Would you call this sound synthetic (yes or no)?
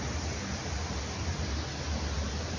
no